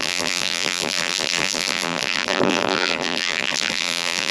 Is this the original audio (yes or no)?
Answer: no